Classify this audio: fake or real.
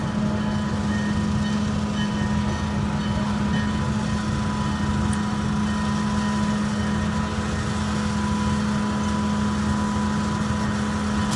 real